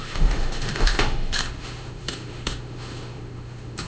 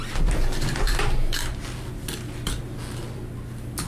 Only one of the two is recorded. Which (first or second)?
second